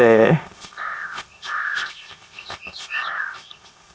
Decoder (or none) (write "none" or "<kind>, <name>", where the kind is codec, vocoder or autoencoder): codec, ZipCodec